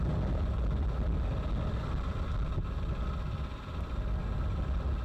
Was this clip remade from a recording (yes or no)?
no